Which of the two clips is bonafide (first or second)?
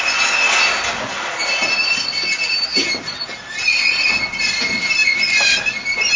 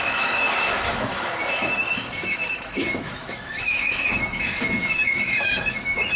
first